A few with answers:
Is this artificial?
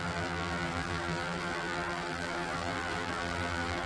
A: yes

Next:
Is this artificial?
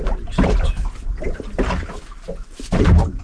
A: no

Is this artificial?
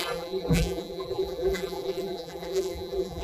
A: yes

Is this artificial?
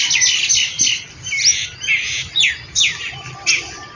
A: no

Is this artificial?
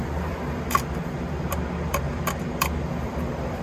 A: yes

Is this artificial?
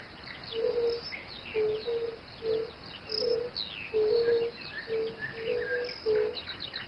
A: no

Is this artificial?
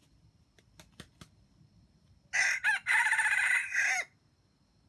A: no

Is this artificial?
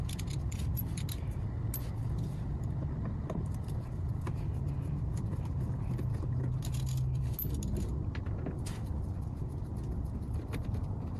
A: no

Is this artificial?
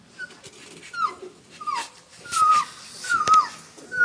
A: no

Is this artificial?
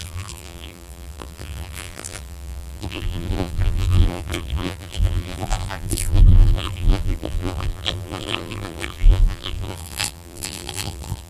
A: yes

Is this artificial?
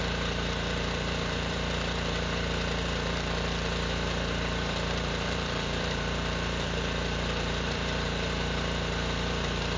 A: yes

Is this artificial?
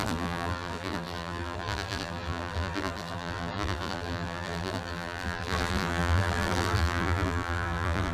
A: yes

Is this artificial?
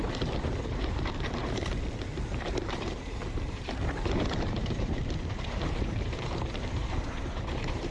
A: yes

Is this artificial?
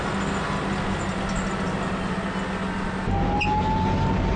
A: no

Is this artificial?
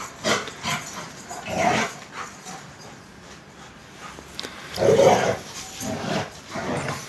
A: yes